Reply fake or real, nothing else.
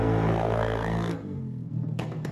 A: fake